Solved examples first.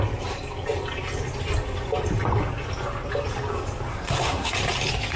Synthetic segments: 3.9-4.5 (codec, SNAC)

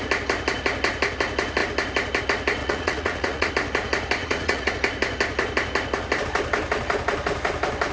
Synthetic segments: 2.6-3.5 (vocoder, Vocos); 4.2-4.7

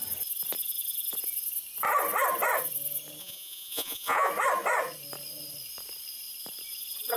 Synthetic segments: 3.2-4.3 (vocoder, Vocos)